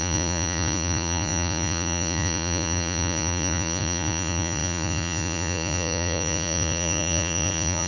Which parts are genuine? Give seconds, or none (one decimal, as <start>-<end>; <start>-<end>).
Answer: none